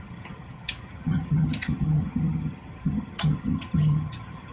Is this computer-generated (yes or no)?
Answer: yes